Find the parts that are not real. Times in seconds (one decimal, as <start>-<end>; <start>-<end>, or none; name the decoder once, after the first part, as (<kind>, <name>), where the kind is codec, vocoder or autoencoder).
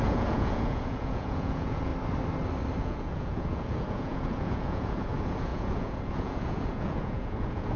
0.0-1.9 (vocoder, Vocos); 2.8-7.8